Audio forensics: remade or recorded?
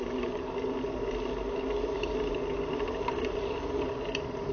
recorded